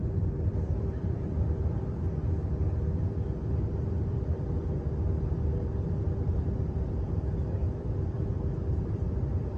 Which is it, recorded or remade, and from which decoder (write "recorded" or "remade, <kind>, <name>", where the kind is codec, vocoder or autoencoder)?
remade, vocoder, BigVGAN v2